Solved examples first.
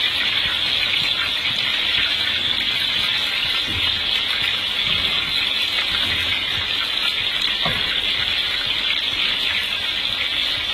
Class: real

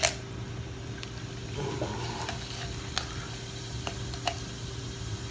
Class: real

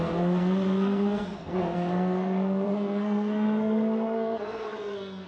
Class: fake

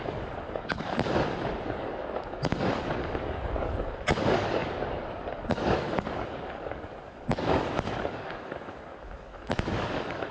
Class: fake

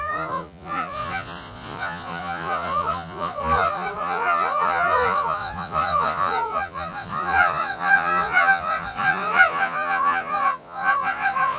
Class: fake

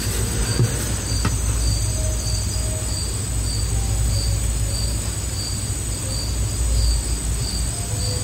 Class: real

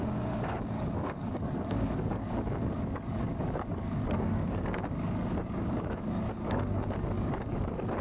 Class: fake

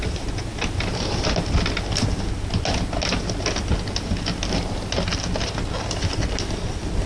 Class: real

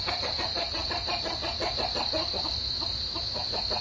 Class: real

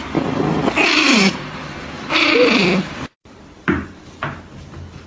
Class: fake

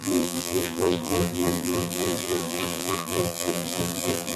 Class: fake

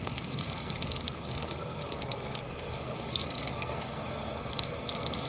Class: fake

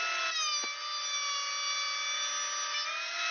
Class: real